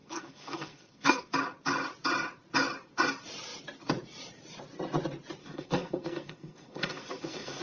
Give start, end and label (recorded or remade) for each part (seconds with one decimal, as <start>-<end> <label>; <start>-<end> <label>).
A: 0.0-1.3 remade; 1.3-5.4 recorded; 5.4-7.6 remade